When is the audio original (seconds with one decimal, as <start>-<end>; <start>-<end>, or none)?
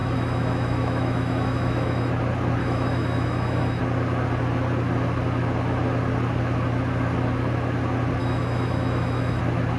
2.1-2.6; 3.8-8.2; 9.4-9.8